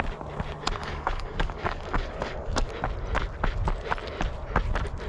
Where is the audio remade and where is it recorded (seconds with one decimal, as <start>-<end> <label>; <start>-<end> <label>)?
0.0-0.8 recorded; 0.8-2.7 remade; 2.7-5.1 recorded